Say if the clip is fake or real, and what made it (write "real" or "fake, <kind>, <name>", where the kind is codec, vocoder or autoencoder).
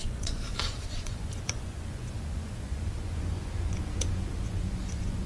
fake, vocoder, Vocos